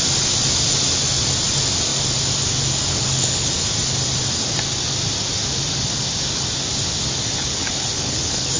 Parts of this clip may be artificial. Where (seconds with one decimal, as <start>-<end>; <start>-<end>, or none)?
2.9-3.5; 7.4-8.6